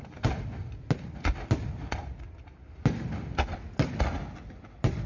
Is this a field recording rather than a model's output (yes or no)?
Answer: yes